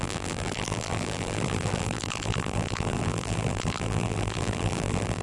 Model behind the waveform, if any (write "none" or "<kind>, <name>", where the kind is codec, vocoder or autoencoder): vocoder, BigVGAN v2